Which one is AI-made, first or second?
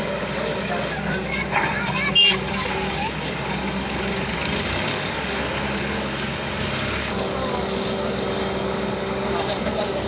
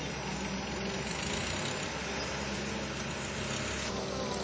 first